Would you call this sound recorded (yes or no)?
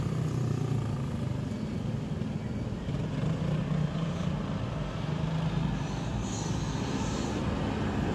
yes